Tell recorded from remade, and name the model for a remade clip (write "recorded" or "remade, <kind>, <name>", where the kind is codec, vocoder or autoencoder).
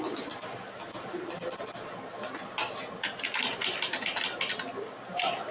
recorded